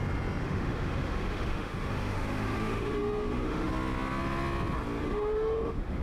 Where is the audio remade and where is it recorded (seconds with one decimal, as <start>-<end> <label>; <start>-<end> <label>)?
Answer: 0.0-0.4 recorded; 0.4-3.7 remade; 3.7-5.0 recorded; 5.0-6.0 remade